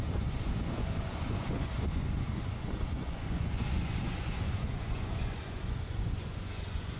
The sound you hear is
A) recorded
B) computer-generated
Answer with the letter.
B